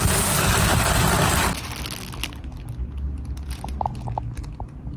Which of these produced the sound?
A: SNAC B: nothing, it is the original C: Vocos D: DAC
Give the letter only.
B